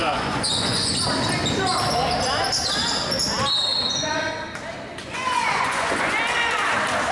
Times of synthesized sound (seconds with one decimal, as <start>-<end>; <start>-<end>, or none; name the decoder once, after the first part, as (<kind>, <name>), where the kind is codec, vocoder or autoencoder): 0.0-0.9 (vocoder, Vocos); 3.7-4.3; 4.9-6.2

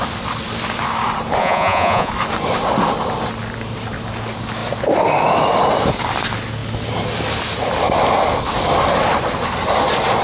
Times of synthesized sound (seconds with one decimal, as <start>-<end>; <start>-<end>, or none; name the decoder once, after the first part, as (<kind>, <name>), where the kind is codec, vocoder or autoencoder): 1.4-2.1 (vocoder, Vocos)

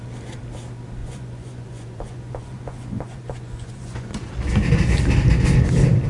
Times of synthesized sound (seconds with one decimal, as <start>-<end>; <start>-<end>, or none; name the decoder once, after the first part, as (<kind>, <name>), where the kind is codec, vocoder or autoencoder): 1.0-4.3 (vocoder, Vocos)

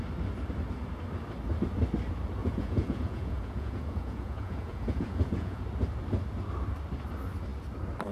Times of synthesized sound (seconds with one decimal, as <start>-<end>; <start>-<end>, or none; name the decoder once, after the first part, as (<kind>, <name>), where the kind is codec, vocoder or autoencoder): 2.4-5.6 (vocoder, Vocos)

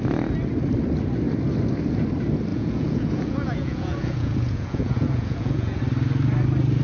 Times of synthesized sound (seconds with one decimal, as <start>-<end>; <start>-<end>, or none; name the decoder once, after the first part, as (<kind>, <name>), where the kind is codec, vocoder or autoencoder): 2.5-5.8 (vocoder, Vocos)